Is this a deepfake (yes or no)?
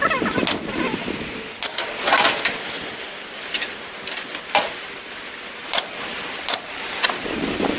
no